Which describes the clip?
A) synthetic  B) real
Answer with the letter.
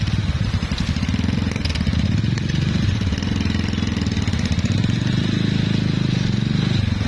B